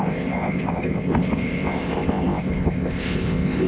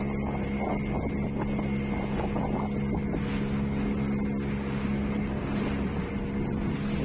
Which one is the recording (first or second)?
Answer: second